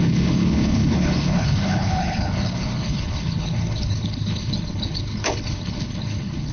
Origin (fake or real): fake